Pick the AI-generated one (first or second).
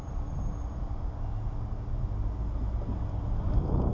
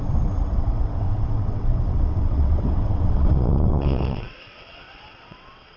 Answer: second